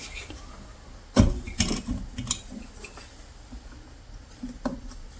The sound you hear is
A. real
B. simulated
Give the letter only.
A